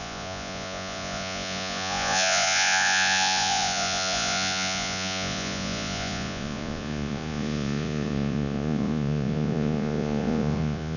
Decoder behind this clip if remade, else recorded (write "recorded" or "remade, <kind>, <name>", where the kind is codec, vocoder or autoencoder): remade, vocoder, Vocos